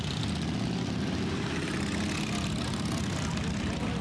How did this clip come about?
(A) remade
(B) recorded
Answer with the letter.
B